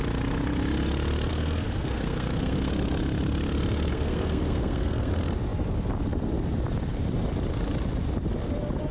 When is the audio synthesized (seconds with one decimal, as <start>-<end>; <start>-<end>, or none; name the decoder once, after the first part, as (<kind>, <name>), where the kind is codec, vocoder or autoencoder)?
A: 1.3-2.7 (codec, SNAC); 3.9-5.1

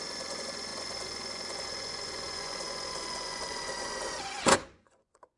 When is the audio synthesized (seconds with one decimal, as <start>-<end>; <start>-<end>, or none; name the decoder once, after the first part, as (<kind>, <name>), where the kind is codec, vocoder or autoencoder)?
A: 0.0-5.4 (vocoder, Vocos)

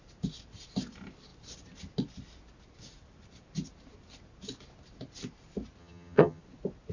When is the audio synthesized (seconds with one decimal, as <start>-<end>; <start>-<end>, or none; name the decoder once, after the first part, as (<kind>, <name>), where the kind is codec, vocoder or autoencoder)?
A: 5.8-6.4 (vocoder, HiFi-GAN)

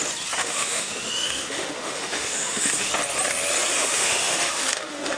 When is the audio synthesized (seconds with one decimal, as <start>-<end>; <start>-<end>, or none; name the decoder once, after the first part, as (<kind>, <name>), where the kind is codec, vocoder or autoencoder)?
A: 0.4-2.9 (autoencoder, DAC-VAE); 3.7-5.2

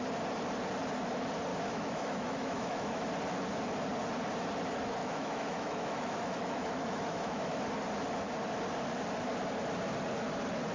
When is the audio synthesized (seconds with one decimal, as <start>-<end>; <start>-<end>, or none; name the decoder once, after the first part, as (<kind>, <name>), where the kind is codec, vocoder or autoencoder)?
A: 1.5-3.1 (autoencoder, DAC-VAE); 5.0-7.6